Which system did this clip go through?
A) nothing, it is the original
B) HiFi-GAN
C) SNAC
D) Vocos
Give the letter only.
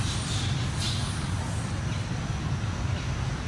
A